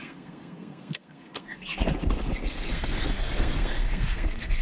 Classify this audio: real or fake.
fake